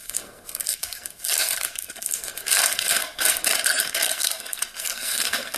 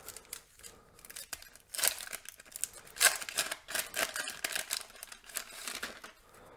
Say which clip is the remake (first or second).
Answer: first